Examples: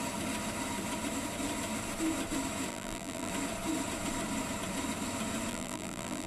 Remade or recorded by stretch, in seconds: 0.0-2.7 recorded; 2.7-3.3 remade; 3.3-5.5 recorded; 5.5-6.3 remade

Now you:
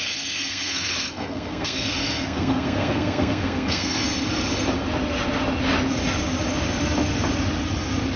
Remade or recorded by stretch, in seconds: 0.0-4.0 remade; 4.0-8.2 recorded

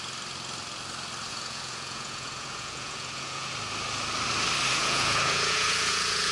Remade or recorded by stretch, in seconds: 0.0-1.3 recorded; 1.3-3.5 remade; 3.5-4.7 recorded; 4.7-6.3 remade

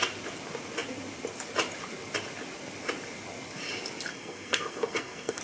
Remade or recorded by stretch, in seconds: 0.0-4.1 recorded; 4.1-5.4 remade

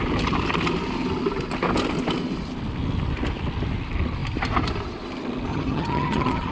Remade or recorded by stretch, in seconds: 0.0-5.5 recorded; 5.5-6.5 remade

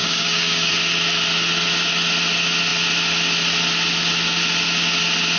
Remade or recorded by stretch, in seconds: 0.0-0.7 remade; 0.7-5.4 recorded